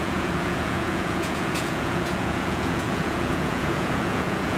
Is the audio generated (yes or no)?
yes